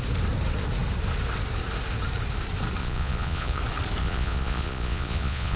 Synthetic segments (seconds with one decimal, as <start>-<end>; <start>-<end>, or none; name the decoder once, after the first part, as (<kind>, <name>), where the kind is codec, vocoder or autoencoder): 2.8-3.6 (vocoder, Vocos); 4.0-5.6